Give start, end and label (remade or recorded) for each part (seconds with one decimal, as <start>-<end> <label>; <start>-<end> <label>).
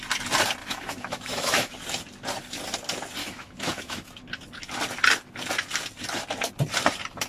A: 0.0-0.6 recorded; 0.6-1.7 remade; 1.7-3.2 recorded; 3.2-4.2 remade; 4.2-7.3 recorded